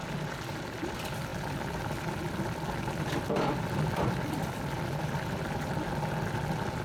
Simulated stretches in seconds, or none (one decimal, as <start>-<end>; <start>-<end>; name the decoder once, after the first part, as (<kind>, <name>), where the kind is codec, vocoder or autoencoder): 0.0-0.9 (vocoder, BigVGAN v2); 1.3-5.4